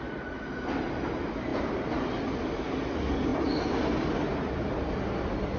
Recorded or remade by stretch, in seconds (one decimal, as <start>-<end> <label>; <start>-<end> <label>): 0.0-5.6 recorded